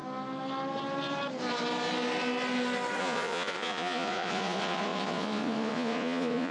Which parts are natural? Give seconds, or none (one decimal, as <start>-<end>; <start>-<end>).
0.0-3.0